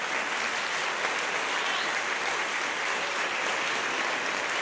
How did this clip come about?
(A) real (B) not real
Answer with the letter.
A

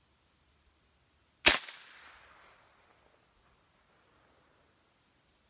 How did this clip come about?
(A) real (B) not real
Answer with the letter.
A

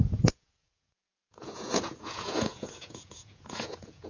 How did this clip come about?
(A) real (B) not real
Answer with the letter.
B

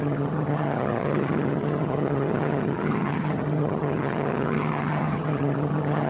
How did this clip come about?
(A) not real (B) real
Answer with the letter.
A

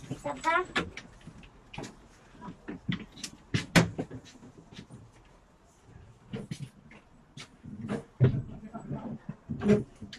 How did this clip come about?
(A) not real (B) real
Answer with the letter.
B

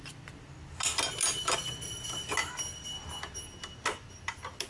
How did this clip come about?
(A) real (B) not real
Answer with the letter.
A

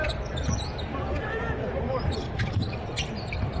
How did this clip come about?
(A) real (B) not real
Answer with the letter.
A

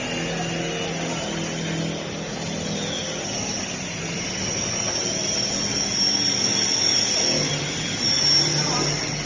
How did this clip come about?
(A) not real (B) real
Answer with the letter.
B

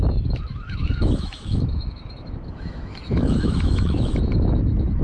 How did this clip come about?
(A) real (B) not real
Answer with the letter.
B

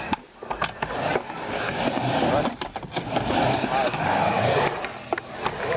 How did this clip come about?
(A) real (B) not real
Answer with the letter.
A